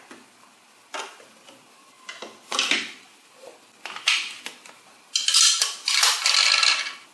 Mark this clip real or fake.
real